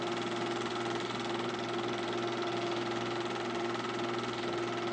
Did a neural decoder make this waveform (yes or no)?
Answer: no